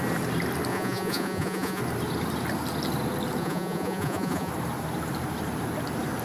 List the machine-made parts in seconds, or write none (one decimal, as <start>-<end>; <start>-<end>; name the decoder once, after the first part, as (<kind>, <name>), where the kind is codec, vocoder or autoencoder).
0.7-1.8 (vocoder, Vocos); 3.4-4.5